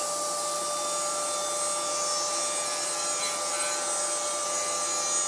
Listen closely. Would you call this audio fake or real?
real